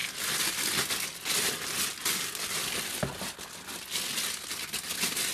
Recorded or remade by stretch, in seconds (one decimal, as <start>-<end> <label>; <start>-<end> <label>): 0.0-5.3 recorded